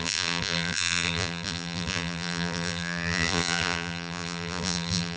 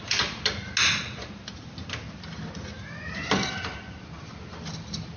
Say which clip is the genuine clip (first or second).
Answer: second